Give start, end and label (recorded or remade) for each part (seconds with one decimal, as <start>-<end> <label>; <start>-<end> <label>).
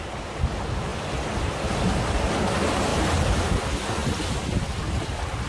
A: 0.0-2.9 recorded; 2.9-3.6 remade; 3.6-5.5 recorded